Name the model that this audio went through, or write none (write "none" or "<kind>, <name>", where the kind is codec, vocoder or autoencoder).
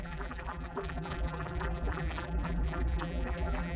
vocoder, BigVGAN v2